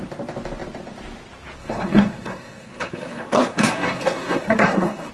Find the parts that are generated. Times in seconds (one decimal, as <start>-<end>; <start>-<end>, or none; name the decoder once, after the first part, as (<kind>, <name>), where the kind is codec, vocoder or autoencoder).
1.6-5.1 (codec, SNAC)